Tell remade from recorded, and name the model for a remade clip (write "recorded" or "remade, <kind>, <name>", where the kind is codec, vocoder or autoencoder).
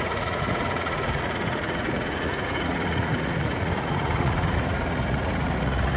remade, vocoder, Vocos